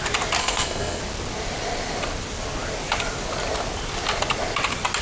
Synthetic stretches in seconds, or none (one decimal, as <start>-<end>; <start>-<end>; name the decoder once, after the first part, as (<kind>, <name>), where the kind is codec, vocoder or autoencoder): 0.4-1.0 (codec, SNAC)